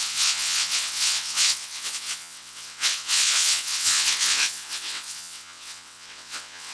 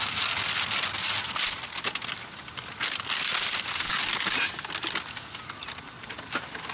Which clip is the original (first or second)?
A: second